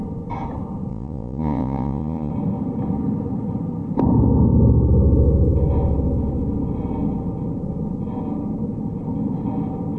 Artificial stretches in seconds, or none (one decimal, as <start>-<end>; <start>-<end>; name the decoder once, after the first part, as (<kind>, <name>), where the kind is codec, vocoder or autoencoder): 0.9-2.3 (vocoder, Vocos)